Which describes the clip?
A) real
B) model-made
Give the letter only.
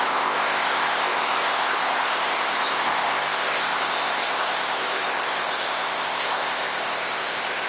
B